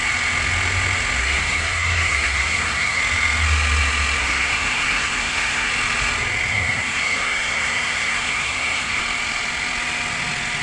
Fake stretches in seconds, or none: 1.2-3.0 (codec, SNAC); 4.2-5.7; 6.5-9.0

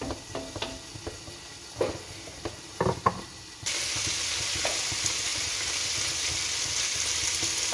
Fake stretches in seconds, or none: none

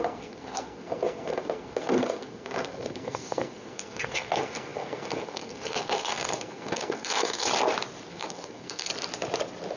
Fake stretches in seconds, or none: 0.0-7.5 (codec, SNAC); 8.1-8.9

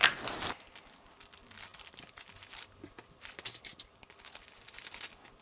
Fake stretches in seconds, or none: none